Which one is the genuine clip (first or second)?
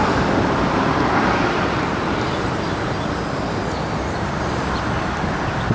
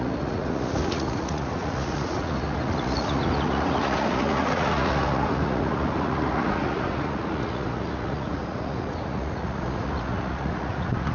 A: first